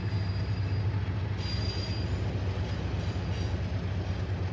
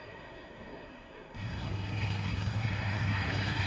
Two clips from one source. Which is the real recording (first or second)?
first